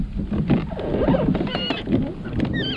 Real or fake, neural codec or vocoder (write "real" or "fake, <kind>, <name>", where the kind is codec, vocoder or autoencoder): real